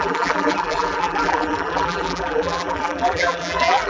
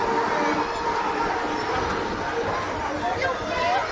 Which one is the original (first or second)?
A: second